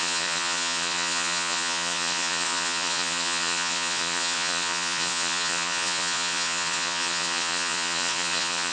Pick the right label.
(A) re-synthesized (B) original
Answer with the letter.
A